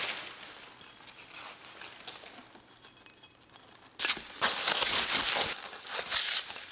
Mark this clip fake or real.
real